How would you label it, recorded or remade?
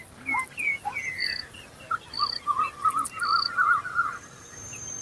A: recorded